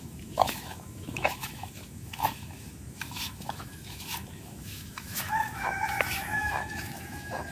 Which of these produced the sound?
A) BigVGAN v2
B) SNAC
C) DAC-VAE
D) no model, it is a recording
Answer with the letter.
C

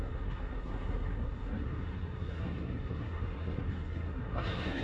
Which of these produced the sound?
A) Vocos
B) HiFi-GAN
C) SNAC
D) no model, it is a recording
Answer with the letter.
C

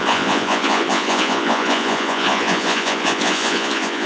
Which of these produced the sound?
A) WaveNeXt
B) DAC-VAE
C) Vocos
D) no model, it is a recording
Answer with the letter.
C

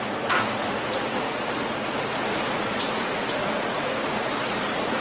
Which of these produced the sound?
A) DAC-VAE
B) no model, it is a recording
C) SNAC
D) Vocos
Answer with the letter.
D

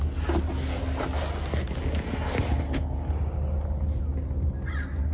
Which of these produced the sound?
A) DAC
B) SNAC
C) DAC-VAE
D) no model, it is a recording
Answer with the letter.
D